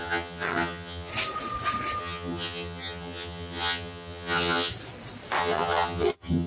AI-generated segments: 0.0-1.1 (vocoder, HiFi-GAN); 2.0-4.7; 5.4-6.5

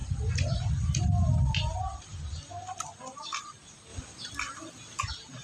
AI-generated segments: none

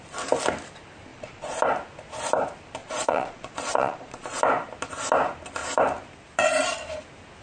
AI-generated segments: 1.1-1.6 (vocoder, Vocos); 2.8-4.4

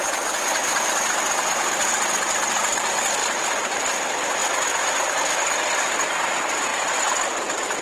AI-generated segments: 3.2-3.9 (vocoder, BigVGAN v2)

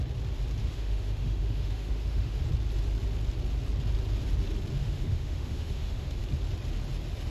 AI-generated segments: 0.6-2.4 (autoencoder, DAC-VAE); 4.8-6.2

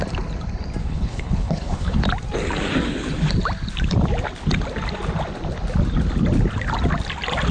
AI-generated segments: 0.8-2.0 (codec, HILCodec)

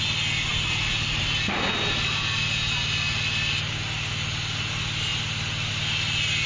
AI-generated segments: none

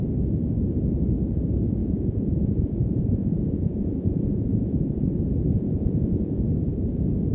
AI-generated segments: 1.8-5.1 (vocoder, Vocos); 5.5-6.4